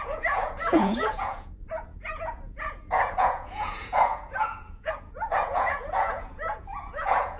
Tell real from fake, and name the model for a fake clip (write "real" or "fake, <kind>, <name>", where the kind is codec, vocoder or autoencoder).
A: fake, vocoder, Vocos